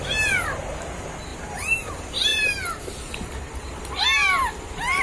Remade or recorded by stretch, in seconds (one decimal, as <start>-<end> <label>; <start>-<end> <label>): 0.0-1.3 recorded; 1.3-1.9 remade; 1.9-2.3 recorded; 2.3-3.7 remade; 3.7-5.0 recorded